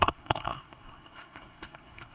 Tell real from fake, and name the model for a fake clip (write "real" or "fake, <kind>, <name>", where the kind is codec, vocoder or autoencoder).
fake, codec, SNAC